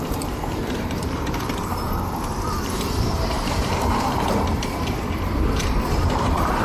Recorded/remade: remade